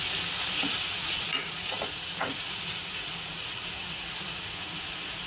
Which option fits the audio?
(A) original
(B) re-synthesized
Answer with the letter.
B